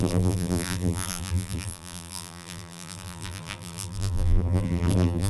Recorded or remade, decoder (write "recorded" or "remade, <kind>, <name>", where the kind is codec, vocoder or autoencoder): remade, vocoder, BigVGAN v2